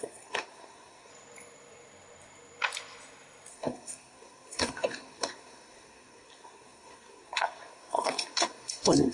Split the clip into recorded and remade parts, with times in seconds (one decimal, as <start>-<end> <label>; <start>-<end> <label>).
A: 0.0-1.1 remade; 1.1-3.5 recorded; 3.5-9.1 remade